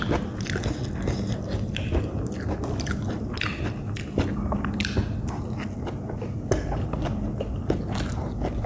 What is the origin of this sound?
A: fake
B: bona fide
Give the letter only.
B